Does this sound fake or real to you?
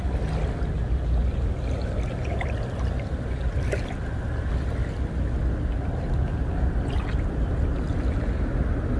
real